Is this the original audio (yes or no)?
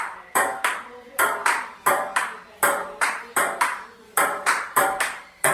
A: no